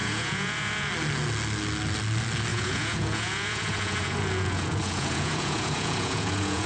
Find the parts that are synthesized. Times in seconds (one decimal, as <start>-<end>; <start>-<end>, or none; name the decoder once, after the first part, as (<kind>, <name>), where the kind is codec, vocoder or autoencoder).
0.0-0.9 (vocoder, Vocos); 2.5-6.7